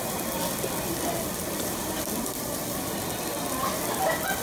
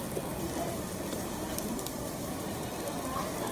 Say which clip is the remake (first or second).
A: second